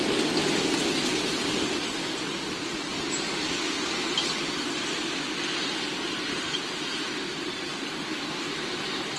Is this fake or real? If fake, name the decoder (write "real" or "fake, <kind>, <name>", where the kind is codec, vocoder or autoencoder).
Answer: real